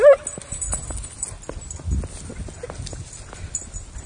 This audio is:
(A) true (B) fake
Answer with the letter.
A